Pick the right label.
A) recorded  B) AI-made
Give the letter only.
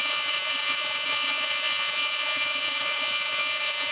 B